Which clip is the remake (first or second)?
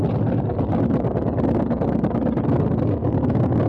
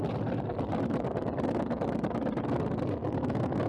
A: second